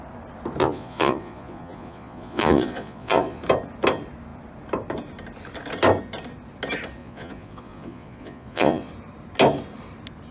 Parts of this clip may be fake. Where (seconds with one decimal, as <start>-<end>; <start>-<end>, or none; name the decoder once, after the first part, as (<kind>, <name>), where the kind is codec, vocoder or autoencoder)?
0.6-3.4 (vocoder, Vocos); 7.0-8.9